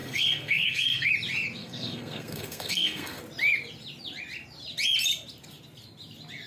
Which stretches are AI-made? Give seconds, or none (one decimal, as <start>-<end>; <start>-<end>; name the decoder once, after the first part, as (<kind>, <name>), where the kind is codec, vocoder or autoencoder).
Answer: 0.0-1.1 (codec, SNAC); 1.6-3.2

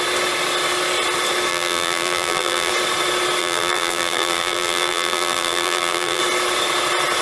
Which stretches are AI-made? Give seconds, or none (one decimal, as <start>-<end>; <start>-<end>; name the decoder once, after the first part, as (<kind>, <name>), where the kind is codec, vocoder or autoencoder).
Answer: 1.5-2.7 (vocoder, BigVGAN v2); 3.4-6.2